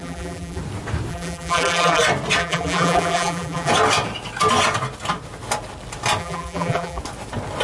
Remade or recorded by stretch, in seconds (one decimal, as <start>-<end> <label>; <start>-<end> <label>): 0.0-0.6 remade; 0.6-1.1 recorded; 1.1-2.0 remade; 2.0-2.4 recorded; 2.4-3.7 remade; 3.7-6.2 recorded; 6.2-7.0 remade; 7.0-7.6 recorded